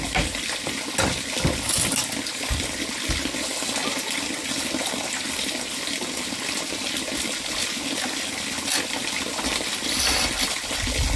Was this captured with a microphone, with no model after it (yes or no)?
yes